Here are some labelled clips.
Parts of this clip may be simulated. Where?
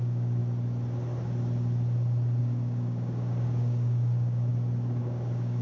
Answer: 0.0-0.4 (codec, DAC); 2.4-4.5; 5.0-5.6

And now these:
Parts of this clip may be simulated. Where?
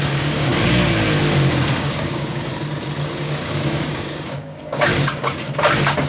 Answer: 0.0-0.5 (codec, DAC); 1.8-2.5; 3.2-4.9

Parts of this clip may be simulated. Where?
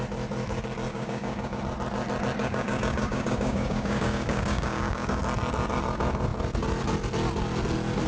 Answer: 0.9-1.6 (codec, DAC); 2.4-5.2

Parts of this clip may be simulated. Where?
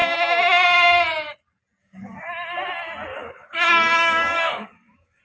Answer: 1.8-2.3 (codec, DAC); 3.1-5.2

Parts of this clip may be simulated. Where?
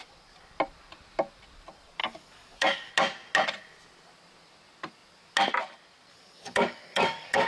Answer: 2.0-2.9 (codec, DAC); 6.1-7.5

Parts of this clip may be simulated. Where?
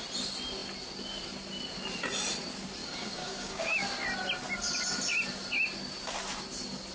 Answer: 2.8-3.8 (codec, DAC)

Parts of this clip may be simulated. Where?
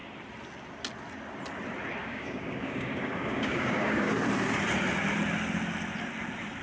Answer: 2.0-4.1 (codec, DAC)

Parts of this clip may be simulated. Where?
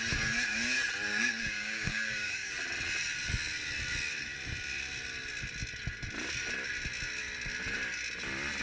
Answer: 1.1-2.5 (codec, DAC)